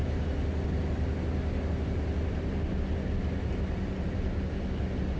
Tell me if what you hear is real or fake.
real